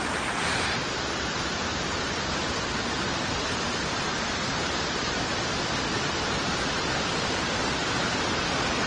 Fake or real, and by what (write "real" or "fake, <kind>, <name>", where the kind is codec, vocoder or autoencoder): real